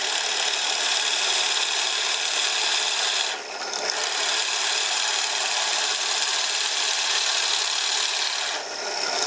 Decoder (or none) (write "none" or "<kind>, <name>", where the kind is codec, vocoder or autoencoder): none